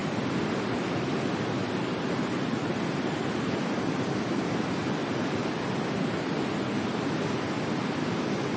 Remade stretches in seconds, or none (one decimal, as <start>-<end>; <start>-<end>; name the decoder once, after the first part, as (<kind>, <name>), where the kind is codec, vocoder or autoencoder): none